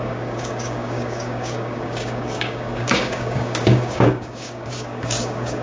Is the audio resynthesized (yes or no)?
yes